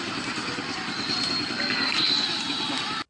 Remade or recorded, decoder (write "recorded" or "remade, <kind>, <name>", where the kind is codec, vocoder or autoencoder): recorded